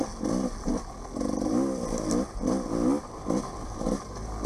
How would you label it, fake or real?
real